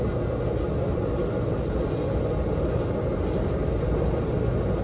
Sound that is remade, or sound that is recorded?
recorded